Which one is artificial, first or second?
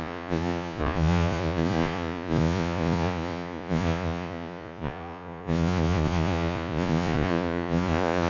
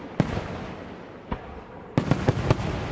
first